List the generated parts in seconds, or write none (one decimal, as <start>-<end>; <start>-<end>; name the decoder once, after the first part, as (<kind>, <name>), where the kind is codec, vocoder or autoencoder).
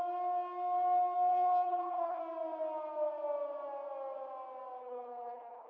1.3-2.2 (codec, HILCodec); 4.8-5.7